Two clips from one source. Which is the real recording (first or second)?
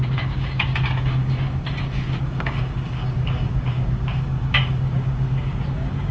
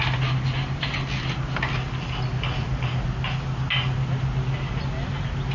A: second